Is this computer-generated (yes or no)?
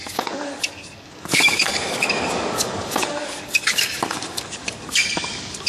yes